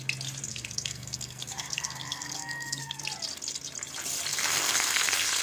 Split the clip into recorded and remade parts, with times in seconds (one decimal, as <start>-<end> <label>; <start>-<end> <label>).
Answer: 0.0-0.5 recorded; 0.5-3.0 remade; 3.0-4.3 recorded; 4.3-5.4 remade